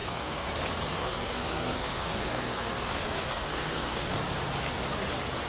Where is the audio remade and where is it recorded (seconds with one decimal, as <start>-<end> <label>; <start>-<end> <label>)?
0.0-0.5 remade; 0.5-0.9 recorded; 0.9-4.2 remade; 4.2-5.5 recorded